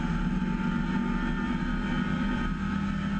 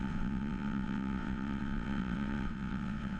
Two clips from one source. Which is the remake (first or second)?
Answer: second